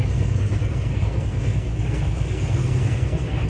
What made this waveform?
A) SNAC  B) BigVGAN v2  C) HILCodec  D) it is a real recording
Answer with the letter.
A